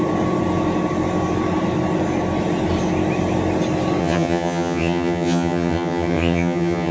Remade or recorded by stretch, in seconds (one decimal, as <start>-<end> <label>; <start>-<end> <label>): 0.0-4.0 recorded; 4.0-6.9 remade